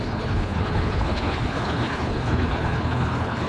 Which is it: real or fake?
fake